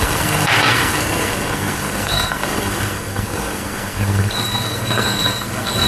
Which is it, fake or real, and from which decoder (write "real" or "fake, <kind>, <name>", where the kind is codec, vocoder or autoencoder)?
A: fake, codec, SNAC